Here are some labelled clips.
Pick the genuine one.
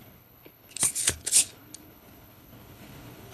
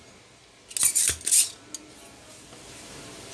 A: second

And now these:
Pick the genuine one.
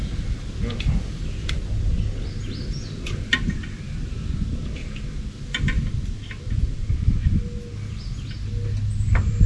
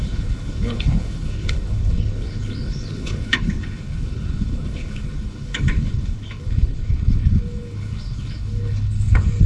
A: first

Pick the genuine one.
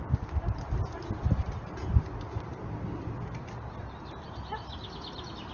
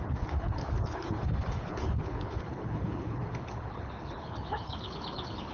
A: first